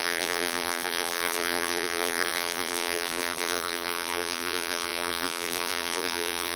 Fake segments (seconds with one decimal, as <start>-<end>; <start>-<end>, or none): 0.0-6.6